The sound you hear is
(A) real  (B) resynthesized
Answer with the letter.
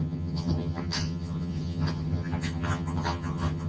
B